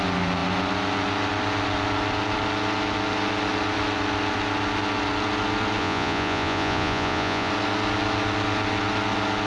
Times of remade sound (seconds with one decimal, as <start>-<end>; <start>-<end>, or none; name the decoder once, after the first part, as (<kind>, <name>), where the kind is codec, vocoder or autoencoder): 5.8-7.5 (vocoder, Vocos)